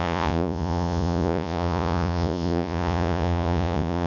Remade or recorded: remade